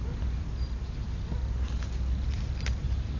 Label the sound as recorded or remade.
recorded